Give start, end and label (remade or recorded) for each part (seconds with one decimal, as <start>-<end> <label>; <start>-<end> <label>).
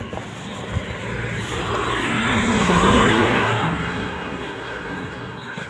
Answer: 0.0-2.0 recorded; 2.0-5.7 remade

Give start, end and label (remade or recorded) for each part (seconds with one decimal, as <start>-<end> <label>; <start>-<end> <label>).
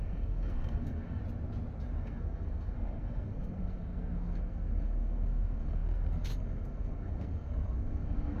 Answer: 0.0-1.2 remade; 1.2-2.0 recorded; 2.0-8.4 remade